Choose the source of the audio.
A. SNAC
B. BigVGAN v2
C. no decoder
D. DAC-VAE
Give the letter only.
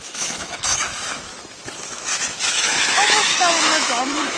D